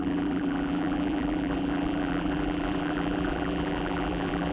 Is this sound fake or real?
fake